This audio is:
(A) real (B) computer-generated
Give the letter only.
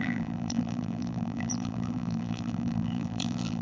B